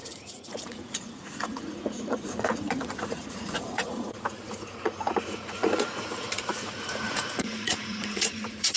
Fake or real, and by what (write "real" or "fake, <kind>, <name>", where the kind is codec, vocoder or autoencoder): fake, vocoder, Vocos